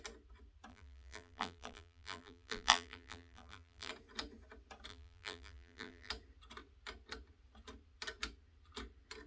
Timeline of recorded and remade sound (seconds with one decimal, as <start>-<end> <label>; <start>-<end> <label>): 0.0-0.7 recorded; 0.7-3.9 remade; 3.9-4.9 recorded; 4.9-6.1 remade; 6.1-9.3 recorded

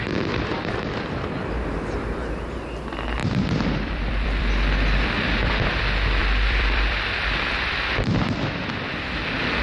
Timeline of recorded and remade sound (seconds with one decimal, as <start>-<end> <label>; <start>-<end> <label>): 0.0-0.5 recorded; 0.5-2.3 remade; 2.3-3.2 recorded; 3.2-5.8 remade; 5.8-6.2 recorded; 6.2-8.7 remade; 8.7-9.6 recorded

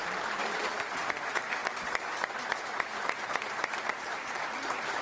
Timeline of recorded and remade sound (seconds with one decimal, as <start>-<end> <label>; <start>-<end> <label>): 0.0-1.6 recorded; 1.6-3.3 remade; 3.3-3.9 recorded; 3.9-5.0 remade

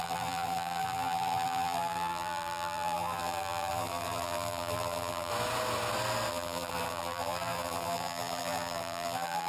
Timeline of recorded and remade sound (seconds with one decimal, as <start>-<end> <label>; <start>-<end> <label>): 0.0-5.3 remade; 5.3-6.3 recorded; 6.3-9.5 remade

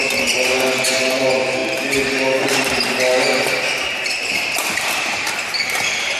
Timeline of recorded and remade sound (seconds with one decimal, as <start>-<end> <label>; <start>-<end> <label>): 0.0-6.2 recorded

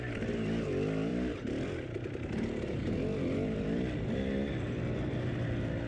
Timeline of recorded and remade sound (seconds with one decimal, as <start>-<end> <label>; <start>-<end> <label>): 0.0-1.1 recorded; 1.1-2.6 remade; 2.6-5.9 recorded

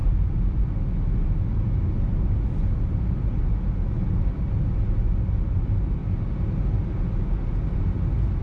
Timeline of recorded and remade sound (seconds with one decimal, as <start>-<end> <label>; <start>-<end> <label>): 0.0-0.6 remade; 0.6-8.4 recorded